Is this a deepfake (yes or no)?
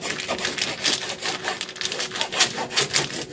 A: no